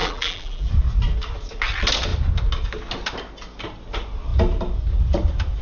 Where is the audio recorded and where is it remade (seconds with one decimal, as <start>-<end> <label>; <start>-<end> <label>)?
0.0-0.7 remade; 0.7-5.6 recorded